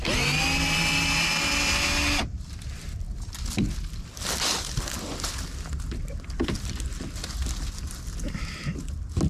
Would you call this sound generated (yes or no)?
no